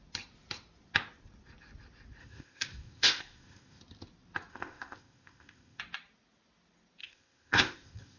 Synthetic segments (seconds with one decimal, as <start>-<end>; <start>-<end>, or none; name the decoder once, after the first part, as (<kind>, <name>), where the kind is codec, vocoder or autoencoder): 2.2-3.8 (codec, ZipCodec); 4.5-5.8; 7.0-8.2